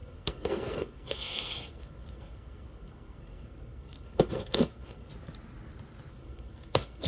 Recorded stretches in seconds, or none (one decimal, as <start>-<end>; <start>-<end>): 5.1-6.1